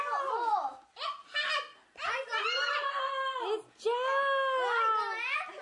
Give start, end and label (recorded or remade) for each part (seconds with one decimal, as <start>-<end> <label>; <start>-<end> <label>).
0.0-5.6 recorded